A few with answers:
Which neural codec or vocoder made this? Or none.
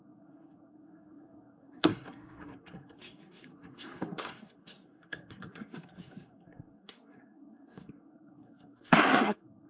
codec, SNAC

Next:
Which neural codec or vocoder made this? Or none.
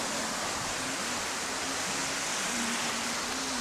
none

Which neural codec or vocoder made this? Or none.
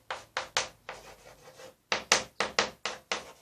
none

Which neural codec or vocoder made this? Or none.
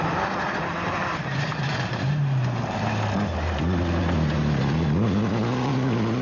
none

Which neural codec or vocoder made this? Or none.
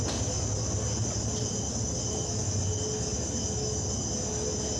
none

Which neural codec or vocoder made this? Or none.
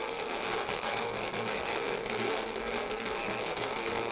codec, SNAC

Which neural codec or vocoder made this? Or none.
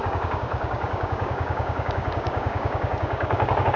codec, DAC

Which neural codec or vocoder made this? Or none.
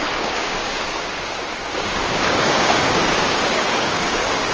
codec, DAC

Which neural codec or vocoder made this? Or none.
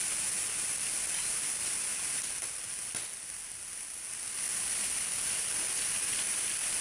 none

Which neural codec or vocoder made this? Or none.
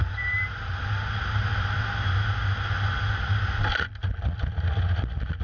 none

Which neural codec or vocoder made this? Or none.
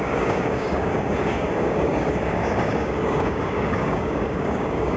codec, DAC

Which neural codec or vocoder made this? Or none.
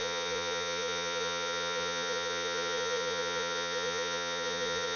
vocoder, Vocos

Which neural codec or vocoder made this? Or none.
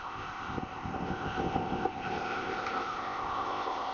codec, ZipCodec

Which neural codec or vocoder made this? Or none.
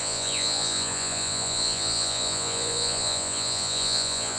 vocoder, Vocos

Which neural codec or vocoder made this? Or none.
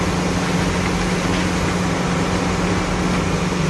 none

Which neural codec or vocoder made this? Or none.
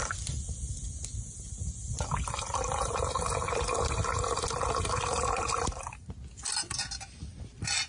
none